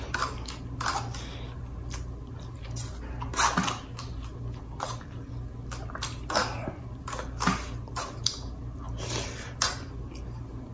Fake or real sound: real